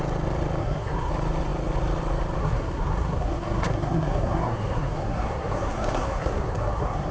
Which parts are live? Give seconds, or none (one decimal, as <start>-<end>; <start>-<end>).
0.0-0.6; 1.1-2.4